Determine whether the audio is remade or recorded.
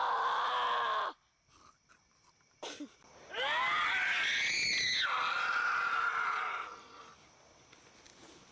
recorded